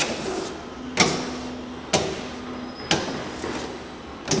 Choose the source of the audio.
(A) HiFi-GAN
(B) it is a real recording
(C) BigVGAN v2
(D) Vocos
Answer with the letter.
B